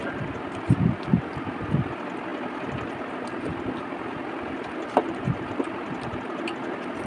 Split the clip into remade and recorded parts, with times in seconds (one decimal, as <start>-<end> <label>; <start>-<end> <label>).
0.0-7.1 recorded